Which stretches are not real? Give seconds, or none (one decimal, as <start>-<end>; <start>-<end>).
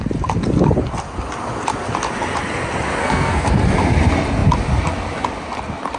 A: 3.0-3.5